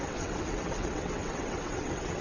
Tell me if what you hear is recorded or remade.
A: remade